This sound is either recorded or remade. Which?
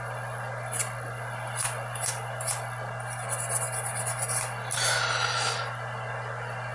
recorded